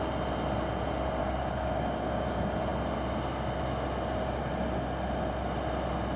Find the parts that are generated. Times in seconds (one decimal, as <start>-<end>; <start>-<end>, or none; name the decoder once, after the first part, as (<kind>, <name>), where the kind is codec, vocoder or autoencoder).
1.2-2.3 (codec, DAC)